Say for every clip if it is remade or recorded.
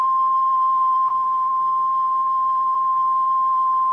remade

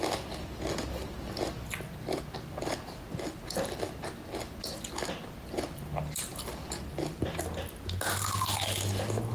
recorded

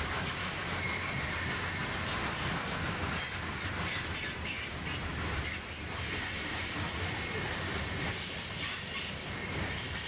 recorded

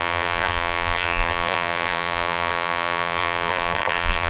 remade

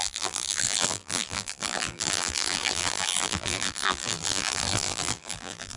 remade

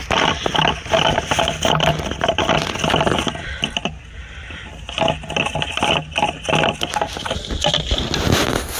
recorded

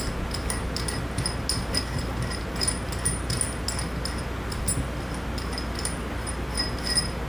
recorded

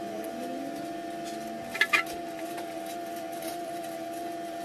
recorded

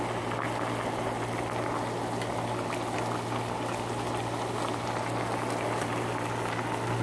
recorded